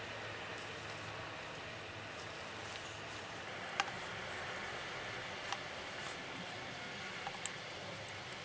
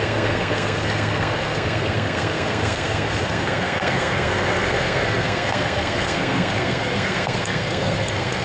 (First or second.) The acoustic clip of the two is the first